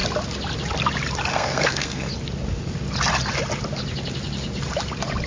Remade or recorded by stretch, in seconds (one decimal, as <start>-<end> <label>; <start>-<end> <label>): 0.0-1.3 recorded; 1.3-2.1 remade; 2.1-5.3 recorded